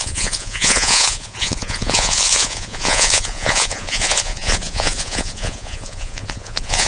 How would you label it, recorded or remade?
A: remade